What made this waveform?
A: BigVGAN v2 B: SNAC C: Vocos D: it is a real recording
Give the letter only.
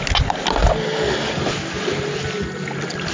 D